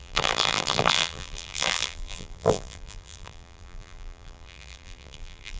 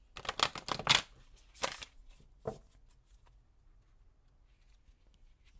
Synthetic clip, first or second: first